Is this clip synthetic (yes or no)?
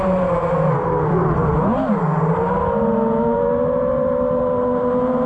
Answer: yes